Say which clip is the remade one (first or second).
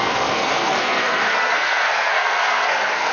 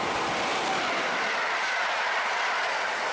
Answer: first